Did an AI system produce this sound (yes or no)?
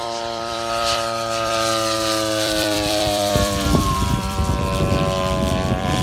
yes